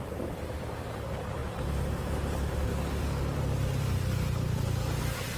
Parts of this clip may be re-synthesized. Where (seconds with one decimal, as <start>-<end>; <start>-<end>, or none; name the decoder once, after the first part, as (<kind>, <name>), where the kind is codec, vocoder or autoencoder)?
0.0-1.4 (vocoder, BigVGAN v2); 3.0-5.4